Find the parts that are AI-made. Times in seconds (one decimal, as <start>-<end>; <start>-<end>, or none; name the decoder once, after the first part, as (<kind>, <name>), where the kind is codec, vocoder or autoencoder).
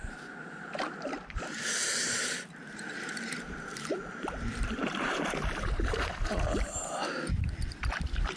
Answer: 1.8-6.8 (vocoder, BigVGAN v2)